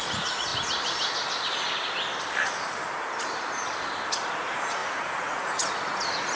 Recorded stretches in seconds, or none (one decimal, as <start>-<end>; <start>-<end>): 0.5-4.3